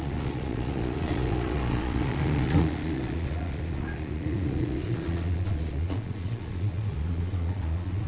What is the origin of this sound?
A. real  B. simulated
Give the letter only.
B